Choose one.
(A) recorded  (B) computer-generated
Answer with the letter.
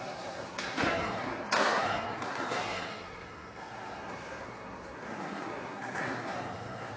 B